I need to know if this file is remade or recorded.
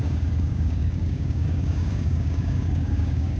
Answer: remade